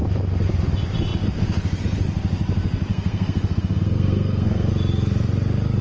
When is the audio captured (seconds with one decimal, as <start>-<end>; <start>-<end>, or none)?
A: 0.0-2.9; 4.7-5.8